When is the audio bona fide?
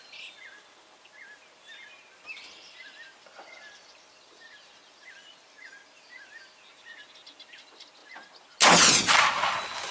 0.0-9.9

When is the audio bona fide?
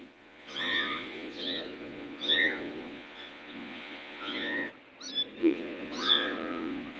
4.7-5.4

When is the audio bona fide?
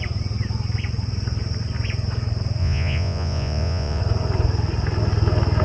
0.0-2.6; 4.0-5.6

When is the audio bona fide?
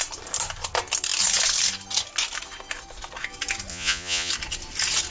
0.0-3.7; 4.3-5.1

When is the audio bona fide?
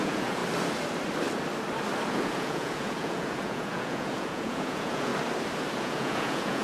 0.4-2.1; 5.1-5.8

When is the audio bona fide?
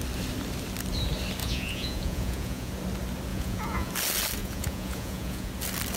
0.0-1.4; 2.7-3.3; 3.9-4.4; 5.5-6.0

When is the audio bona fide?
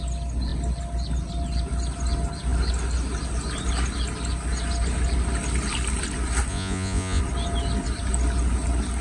0.0-6.5; 7.2-9.0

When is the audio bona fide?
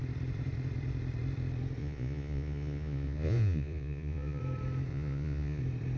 0.0-1.8; 4.4-4.9; 5.6-6.0